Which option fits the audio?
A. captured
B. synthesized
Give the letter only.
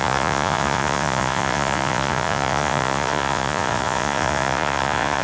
B